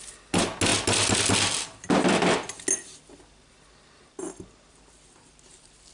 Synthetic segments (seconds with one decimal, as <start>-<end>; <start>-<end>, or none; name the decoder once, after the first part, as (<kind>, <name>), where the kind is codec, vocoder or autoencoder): none